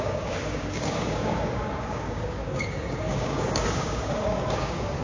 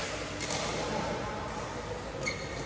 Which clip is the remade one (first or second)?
first